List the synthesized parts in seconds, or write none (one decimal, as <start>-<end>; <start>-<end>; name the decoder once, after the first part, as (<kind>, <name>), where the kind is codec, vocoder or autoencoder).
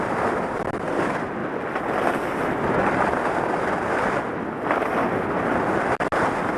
none